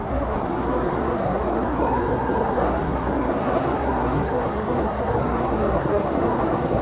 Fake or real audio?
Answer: fake